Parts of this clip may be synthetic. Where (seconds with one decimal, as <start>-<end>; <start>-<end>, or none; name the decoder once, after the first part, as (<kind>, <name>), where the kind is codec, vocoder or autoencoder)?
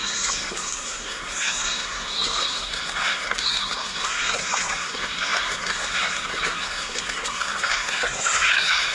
0.0-8.9 (codec, SNAC)